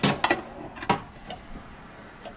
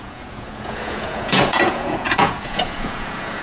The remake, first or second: second